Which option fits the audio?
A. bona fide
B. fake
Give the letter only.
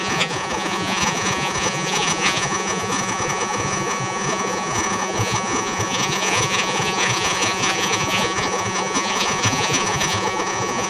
B